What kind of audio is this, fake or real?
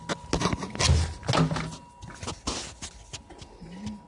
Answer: real